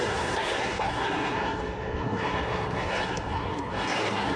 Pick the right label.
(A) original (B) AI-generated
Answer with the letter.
B